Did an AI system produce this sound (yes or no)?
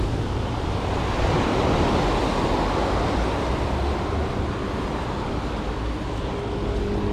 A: no